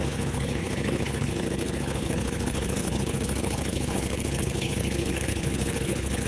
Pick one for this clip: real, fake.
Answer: fake